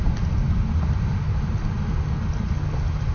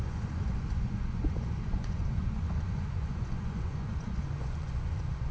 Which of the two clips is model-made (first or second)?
second